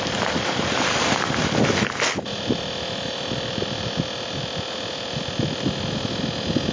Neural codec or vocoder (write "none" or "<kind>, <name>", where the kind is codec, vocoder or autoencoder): none